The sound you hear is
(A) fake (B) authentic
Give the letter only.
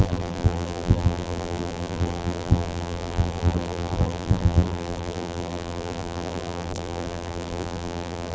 A